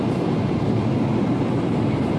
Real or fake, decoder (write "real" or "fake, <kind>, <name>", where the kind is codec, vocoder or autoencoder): real